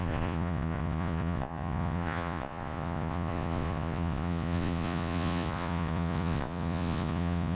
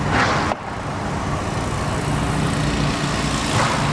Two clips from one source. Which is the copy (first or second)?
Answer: first